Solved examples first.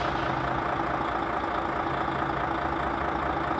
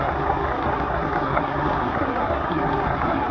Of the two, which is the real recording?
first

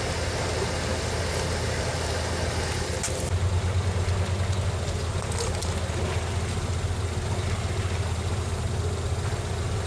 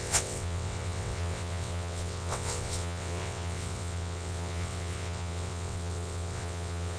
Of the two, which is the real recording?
first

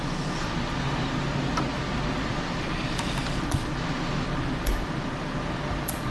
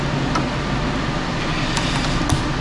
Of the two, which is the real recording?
second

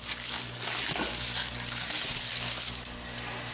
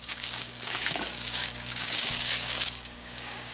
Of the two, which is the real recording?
first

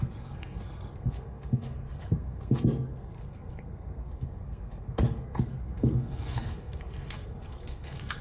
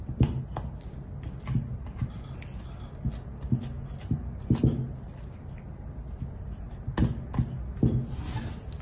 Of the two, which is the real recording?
second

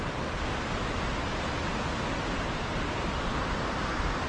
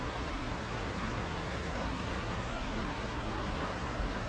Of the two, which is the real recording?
first